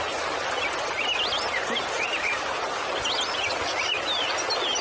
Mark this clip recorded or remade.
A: recorded